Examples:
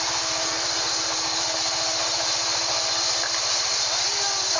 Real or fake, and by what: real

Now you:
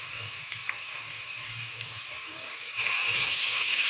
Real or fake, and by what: fake, codec, DAC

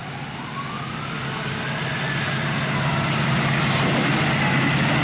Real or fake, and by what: real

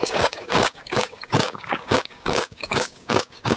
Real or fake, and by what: fake, codec, DAC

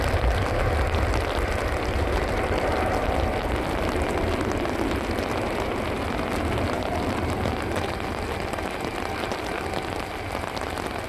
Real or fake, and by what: real